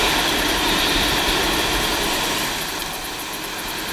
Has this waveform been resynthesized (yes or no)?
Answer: yes